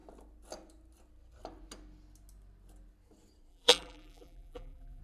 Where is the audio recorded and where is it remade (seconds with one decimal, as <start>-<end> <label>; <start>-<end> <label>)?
0.0-3.5 recorded; 3.5-5.0 remade